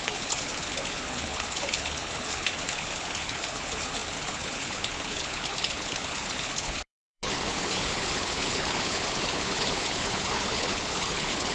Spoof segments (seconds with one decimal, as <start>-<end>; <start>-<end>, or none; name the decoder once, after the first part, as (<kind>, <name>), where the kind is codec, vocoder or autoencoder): 0.0-11.5 (codec, HILCodec)